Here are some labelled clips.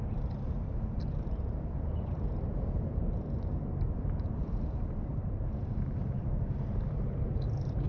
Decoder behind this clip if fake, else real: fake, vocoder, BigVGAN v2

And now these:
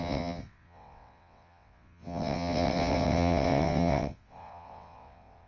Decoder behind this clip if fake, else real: fake, vocoder, WaveNeXt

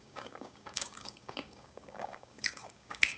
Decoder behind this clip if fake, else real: fake, codec, DAC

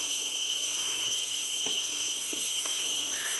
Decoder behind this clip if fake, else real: fake, codec, SNAC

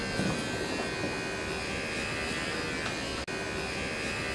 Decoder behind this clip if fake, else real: real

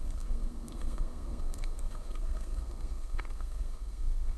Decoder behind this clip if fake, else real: fake, codec, SNAC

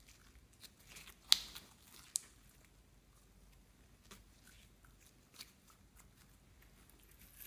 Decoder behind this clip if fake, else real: real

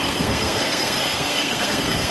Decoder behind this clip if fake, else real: fake, codec, SNAC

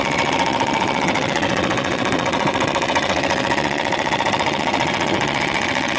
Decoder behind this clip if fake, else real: fake, vocoder, WaveNeXt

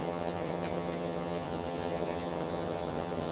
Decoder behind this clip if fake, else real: fake, vocoder, HiFi-GAN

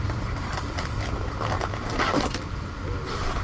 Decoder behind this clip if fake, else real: real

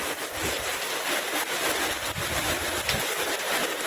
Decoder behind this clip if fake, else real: real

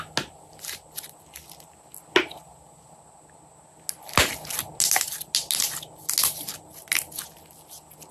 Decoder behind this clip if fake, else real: real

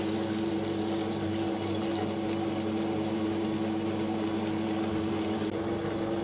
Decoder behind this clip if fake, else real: real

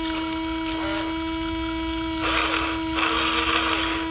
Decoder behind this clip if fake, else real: real